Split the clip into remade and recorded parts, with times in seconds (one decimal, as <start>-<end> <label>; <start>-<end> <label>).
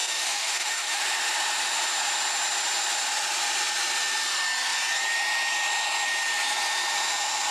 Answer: 0.0-1.0 remade; 1.0-7.5 recorded